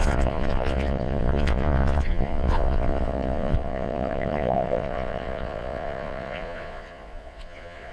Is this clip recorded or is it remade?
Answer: remade